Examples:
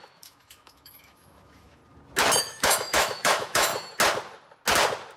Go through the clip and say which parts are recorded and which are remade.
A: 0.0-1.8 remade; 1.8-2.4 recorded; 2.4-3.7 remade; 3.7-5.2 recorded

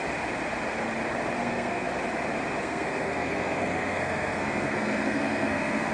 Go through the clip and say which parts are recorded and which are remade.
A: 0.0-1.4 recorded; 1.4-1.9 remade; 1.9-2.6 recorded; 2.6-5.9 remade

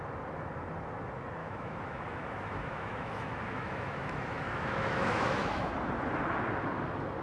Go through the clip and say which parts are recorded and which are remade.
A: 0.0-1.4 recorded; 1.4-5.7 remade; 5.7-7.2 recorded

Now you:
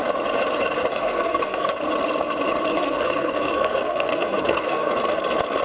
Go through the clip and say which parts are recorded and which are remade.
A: 0.0-0.9 recorded; 0.9-1.7 remade; 1.7-2.7 recorded; 2.7-4.9 remade; 4.9-5.6 recorded

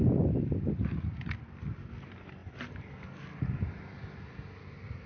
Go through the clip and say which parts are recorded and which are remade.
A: 0.0-5.1 recorded

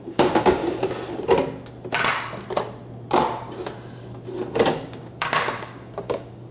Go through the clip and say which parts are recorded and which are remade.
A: 0.0-0.6 remade; 0.6-4.5 recorded; 4.5-6.5 remade

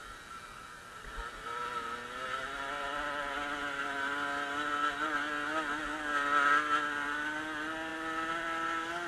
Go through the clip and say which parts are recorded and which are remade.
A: 0.0-9.1 recorded

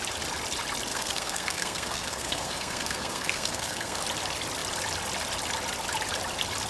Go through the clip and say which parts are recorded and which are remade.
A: 0.0-0.9 recorded; 0.9-4.0 remade; 4.0-6.7 recorded